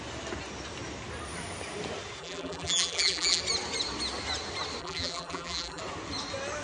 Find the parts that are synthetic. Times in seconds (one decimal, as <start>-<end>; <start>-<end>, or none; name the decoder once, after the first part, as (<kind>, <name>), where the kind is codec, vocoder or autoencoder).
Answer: 2.2-3.4 (vocoder, BigVGAN v2); 4.8-5.8